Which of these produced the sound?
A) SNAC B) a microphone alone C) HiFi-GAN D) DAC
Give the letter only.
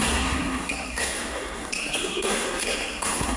A